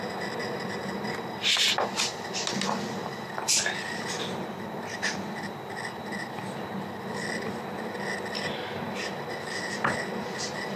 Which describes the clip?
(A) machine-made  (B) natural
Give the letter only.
B